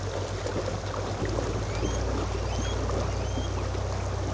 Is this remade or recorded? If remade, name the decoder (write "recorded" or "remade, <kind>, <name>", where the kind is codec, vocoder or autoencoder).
recorded